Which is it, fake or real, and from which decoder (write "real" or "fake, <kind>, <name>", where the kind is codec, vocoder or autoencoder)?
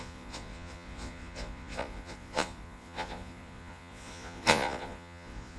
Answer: fake, vocoder, Vocos